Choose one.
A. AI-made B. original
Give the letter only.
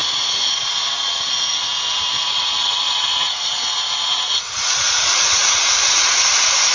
A